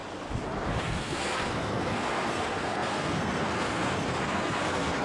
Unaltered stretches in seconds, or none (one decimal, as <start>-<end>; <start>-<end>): 0.0-0.8